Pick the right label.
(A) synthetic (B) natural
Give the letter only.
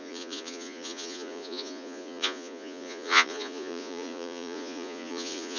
A